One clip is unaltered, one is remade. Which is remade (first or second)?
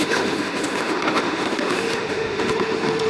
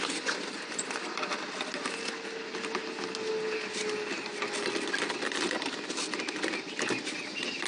first